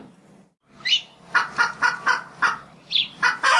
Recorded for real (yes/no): yes